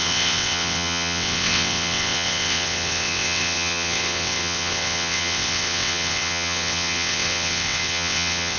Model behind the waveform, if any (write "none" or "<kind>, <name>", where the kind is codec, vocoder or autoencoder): vocoder, WaveNeXt